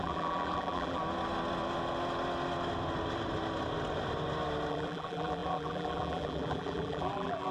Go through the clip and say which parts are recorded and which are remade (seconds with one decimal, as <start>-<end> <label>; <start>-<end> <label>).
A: 0.0-1.0 remade; 1.0-4.7 recorded; 4.7-7.5 remade